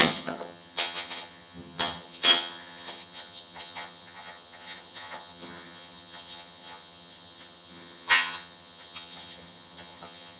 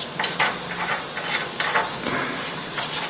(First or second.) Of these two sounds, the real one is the second